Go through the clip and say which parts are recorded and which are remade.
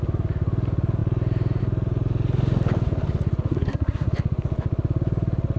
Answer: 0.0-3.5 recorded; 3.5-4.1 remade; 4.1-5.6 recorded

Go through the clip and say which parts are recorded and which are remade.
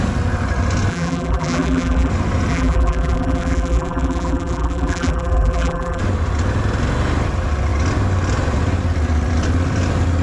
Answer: 0.0-0.9 recorded; 0.9-2.1 remade; 2.1-2.5 recorded; 2.5-6.0 remade; 6.0-10.2 recorded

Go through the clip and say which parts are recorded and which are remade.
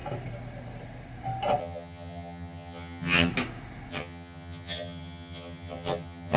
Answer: 0.0-1.6 recorded; 1.6-3.3 remade; 3.3-3.9 recorded; 3.9-6.4 remade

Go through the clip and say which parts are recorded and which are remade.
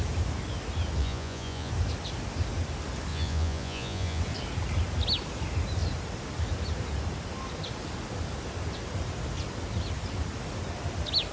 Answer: 0.0-1.0 recorded; 1.0-1.7 remade; 1.7-3.1 recorded; 3.1-4.2 remade; 4.2-11.3 recorded